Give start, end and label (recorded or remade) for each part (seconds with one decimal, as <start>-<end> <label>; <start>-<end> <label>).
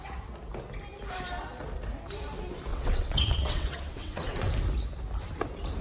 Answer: 0.0-2.7 recorded; 2.7-4.5 remade; 4.5-5.8 recorded